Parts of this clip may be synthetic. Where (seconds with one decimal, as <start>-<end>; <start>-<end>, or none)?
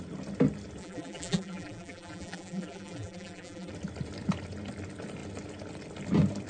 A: 0.8-3.7